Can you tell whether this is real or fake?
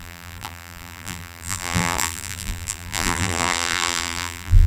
fake